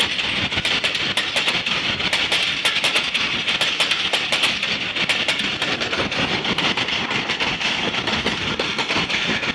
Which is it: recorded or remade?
recorded